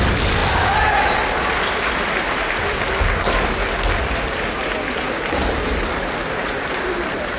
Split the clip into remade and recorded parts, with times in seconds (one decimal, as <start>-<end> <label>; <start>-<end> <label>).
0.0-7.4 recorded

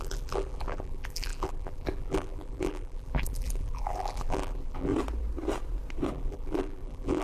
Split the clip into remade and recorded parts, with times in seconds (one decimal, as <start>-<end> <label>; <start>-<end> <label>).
0.0-4.9 remade; 4.9-6.1 recorded; 6.1-7.2 remade

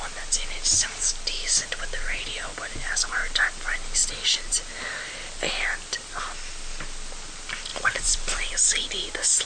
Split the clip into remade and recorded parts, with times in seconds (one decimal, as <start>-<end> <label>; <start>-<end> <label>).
0.0-7.7 recorded; 7.7-8.5 remade; 8.5-9.5 recorded

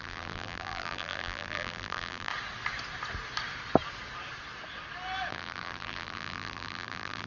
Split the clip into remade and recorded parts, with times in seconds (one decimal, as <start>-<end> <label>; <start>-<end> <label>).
0.0-2.3 remade; 2.3-5.3 recorded; 5.3-7.3 remade

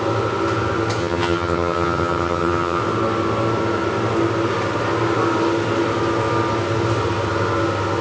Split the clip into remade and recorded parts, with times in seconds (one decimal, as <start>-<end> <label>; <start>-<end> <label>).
0.0-1.0 recorded; 1.0-2.8 remade; 2.8-8.0 recorded

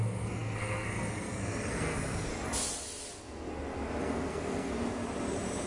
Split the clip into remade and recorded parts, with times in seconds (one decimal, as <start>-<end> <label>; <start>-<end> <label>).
0.0-2.3 remade; 2.3-4.0 recorded; 4.0-4.7 remade; 4.7-5.7 recorded